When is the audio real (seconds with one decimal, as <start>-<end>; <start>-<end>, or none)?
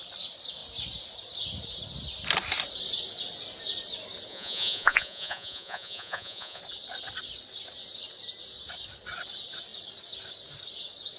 0.0-4.3; 6.6-11.2